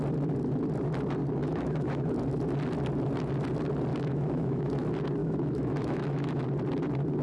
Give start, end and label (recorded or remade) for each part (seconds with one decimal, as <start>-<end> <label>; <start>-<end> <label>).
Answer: 0.0-1.4 recorded; 1.4-2.1 remade; 2.1-3.9 recorded; 3.9-4.7 remade; 4.7-5.2 recorded; 5.2-6.4 remade; 6.4-7.2 recorded